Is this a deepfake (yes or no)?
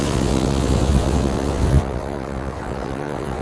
yes